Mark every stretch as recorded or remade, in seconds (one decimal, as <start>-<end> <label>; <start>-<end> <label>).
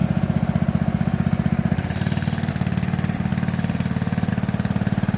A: 0.0-5.2 recorded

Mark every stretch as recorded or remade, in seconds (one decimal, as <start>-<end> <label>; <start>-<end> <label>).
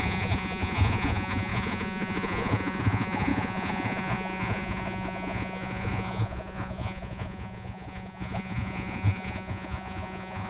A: 0.0-10.5 remade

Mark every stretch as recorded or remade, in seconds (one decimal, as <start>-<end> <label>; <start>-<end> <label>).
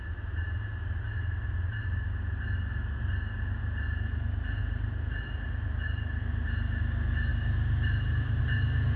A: 0.0-9.0 recorded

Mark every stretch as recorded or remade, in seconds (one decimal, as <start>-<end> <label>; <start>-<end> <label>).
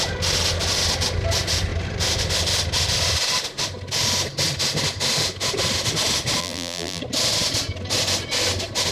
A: 0.0-6.4 recorded; 6.4-7.0 remade; 7.0-8.9 recorded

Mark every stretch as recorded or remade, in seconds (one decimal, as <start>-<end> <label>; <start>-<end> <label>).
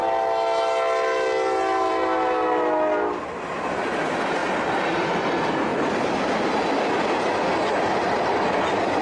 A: 0.0-9.0 recorded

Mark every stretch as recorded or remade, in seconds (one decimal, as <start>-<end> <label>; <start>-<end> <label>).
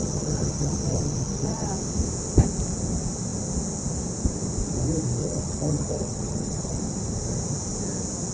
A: 0.0-1.7 remade; 1.7-5.2 recorded; 5.2-6.8 remade; 6.8-8.3 recorded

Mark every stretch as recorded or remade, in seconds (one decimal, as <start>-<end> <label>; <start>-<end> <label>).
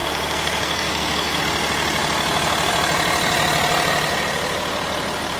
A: 0.0-1.4 remade; 1.4-5.4 recorded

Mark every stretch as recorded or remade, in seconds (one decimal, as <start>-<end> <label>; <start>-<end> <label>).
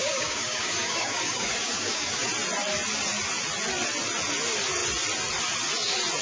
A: 0.0-2.3 remade; 2.3-6.2 recorded